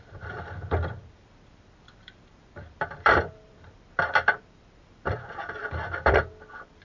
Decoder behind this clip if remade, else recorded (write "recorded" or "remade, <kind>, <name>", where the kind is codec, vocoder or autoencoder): remade, vocoder, BigVGAN v2